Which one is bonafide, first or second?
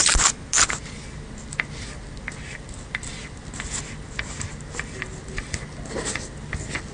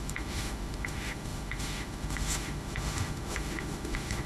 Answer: first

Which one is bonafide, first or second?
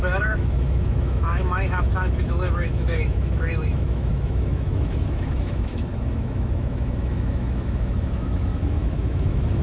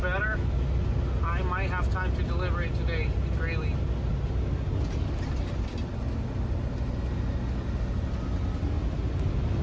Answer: second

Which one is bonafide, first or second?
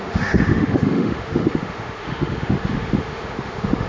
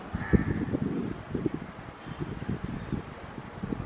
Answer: second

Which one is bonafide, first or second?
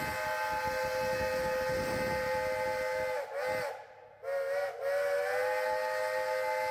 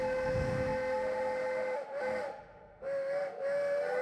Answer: first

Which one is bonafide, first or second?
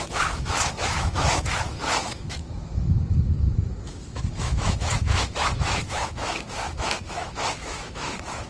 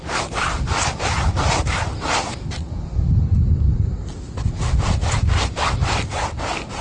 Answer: second